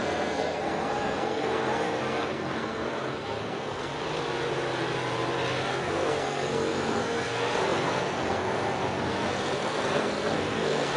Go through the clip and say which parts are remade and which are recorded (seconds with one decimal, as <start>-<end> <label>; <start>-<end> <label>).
0.0-3.9 remade; 3.9-5.7 recorded; 5.7-11.0 remade